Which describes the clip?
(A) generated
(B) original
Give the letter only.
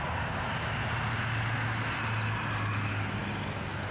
B